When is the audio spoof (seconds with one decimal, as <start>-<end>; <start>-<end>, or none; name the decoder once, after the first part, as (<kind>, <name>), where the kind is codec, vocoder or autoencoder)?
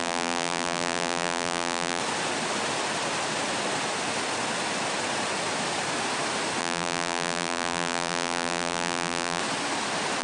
0.0-2.0 (vocoder, BigVGAN v2); 6.6-9.4